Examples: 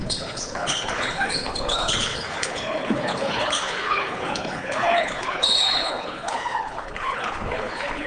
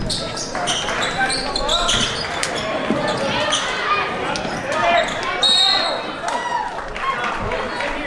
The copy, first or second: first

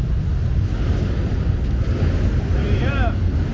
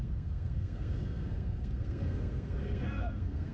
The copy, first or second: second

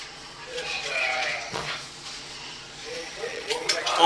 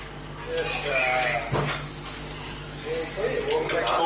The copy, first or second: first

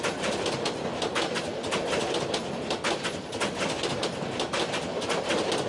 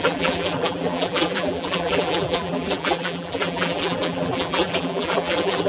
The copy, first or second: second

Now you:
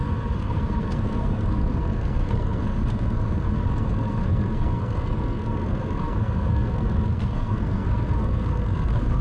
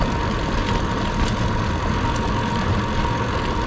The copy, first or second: first